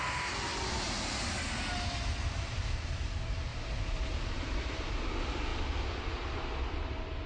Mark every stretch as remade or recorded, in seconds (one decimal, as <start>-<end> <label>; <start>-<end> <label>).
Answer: 0.0-3.5 recorded; 3.5-4.7 remade; 4.7-7.3 recorded